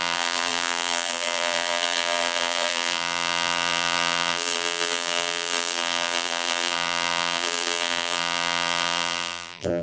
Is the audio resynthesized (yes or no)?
yes